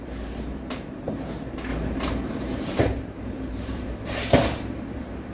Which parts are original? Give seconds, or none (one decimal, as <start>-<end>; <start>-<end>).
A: 1.7-2.8